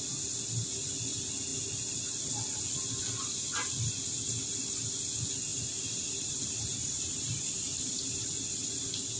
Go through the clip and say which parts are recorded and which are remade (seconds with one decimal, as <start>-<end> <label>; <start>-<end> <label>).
0.0-5.5 recorded; 5.5-8.0 remade; 8.0-9.2 recorded